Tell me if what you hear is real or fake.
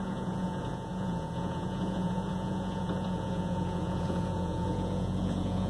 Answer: fake